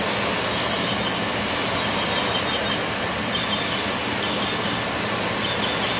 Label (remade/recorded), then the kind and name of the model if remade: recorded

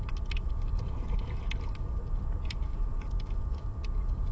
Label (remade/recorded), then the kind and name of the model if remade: recorded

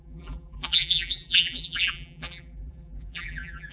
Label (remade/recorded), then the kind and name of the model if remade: remade, vocoder, BigVGAN v2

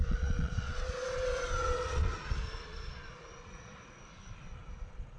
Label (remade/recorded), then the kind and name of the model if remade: remade, vocoder, Vocos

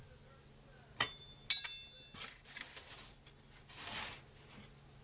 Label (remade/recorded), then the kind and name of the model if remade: recorded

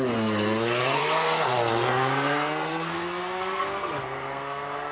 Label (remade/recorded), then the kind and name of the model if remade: remade, codec, SNAC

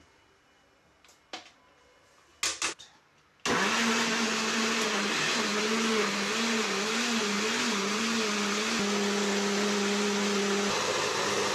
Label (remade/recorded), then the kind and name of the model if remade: recorded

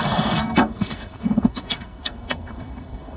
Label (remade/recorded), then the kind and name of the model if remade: remade, codec, SNAC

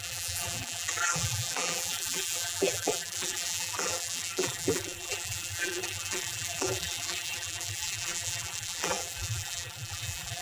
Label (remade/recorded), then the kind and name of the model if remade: remade, vocoder, BigVGAN v2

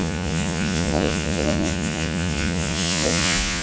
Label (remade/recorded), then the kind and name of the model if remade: remade, vocoder, Vocos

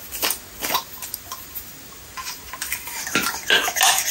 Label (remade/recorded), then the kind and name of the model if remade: recorded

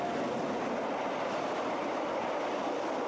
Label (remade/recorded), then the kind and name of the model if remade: recorded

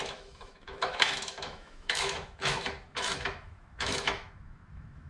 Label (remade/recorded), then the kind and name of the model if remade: remade, autoencoder, DAC-VAE